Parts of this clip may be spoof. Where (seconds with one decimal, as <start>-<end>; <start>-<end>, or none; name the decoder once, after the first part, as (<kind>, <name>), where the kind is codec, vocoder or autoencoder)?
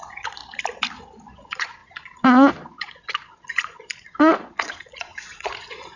0.0-0.4 (vocoder, Vocos); 1.3-6.0